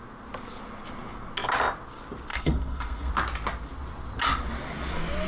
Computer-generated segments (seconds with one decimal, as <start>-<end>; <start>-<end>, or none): 2.3-3.1